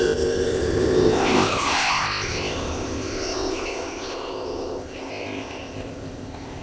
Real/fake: fake